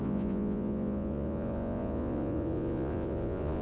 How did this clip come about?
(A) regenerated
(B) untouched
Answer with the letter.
A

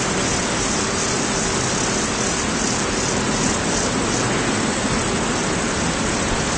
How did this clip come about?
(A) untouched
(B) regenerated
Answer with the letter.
A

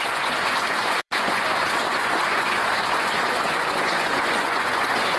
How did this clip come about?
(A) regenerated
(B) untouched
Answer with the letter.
A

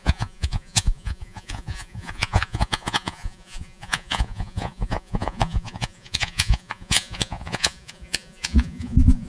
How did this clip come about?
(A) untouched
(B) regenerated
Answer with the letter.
B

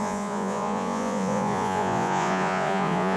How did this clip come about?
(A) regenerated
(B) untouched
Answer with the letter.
A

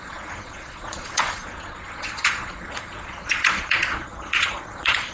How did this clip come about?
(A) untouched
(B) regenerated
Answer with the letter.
B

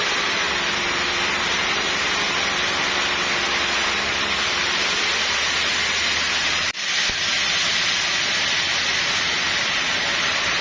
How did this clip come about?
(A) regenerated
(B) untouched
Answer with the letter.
B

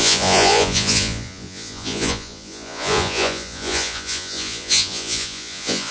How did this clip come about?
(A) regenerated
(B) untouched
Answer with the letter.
A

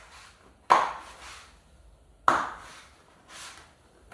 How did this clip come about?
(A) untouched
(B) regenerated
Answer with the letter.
A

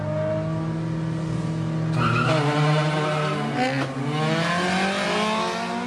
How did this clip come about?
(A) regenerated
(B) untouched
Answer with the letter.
B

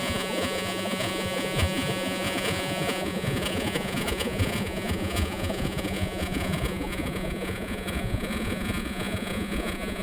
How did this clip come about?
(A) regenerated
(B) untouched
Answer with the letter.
A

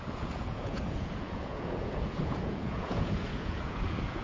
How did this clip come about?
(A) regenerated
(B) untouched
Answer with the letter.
A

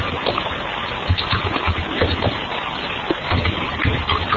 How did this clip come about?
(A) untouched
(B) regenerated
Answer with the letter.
A